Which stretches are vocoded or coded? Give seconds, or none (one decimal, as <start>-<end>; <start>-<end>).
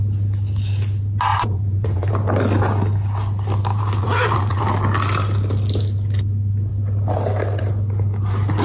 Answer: 1.3-2.1; 3.7-4.6